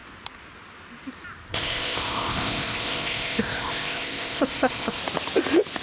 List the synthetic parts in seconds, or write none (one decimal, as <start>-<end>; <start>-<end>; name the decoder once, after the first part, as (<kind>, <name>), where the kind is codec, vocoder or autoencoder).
1.5-5.0 (codec, ZipCodec)

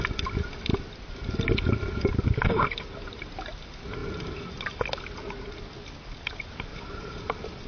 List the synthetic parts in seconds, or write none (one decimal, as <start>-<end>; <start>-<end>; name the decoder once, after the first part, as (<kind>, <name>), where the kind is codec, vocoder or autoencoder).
6.7-7.2 (vocoder, Vocos)

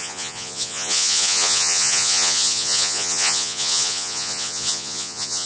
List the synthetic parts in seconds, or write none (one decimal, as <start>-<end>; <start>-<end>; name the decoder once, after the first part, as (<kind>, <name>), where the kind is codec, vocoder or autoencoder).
0.0-5.5 (vocoder, Vocos)

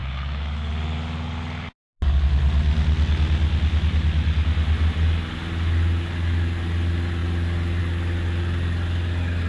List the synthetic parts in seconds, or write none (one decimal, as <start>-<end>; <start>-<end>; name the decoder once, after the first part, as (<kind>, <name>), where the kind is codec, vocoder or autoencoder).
0.0-0.7 (autoencoder, DAC-VAE)

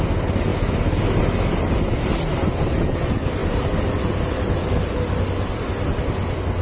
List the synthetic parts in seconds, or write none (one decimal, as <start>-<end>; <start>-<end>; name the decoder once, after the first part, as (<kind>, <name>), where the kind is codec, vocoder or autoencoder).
none

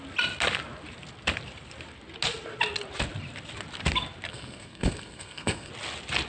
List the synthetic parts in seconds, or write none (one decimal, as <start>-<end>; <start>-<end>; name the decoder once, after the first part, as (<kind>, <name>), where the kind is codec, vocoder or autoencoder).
4.3-5.7 (codec, SNAC)

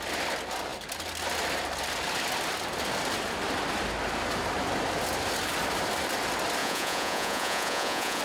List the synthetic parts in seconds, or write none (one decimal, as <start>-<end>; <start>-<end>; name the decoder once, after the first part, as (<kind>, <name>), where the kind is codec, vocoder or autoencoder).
6.6-8.2 (vocoder, Vocos)